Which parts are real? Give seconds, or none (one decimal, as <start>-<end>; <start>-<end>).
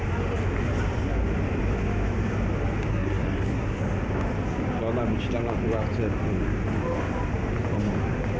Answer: 0.0-2.9; 3.8-8.4